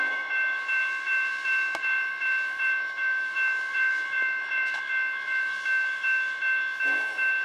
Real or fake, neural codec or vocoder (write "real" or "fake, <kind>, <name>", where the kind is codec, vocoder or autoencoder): fake, autoencoder, DAC-VAE